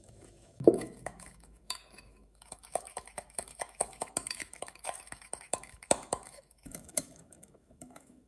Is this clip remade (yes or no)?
yes